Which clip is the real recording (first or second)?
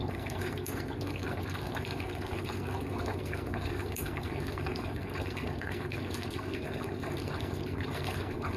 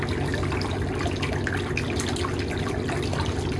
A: second